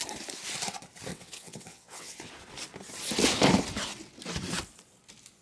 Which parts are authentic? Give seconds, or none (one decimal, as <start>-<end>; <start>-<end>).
0.0-1.1; 2.3-5.4